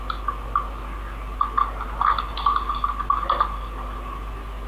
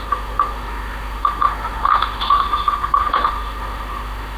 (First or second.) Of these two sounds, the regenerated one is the second